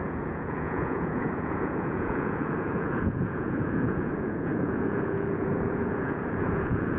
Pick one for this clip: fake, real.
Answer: fake